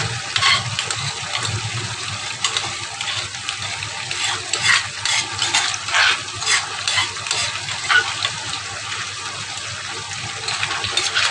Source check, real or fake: real